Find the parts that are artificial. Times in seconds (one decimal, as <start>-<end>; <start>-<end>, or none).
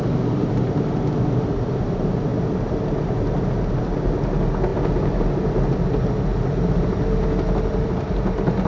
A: none